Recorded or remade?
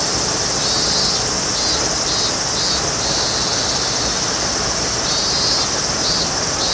recorded